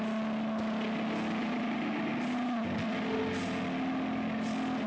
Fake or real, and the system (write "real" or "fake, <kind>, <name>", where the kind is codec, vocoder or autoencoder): real